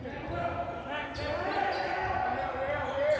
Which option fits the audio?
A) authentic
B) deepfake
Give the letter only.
A